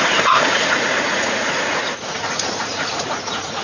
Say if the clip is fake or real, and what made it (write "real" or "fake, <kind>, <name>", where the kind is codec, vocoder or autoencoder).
fake, vocoder, Vocos